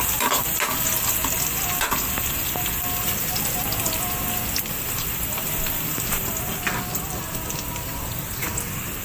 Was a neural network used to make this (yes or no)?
no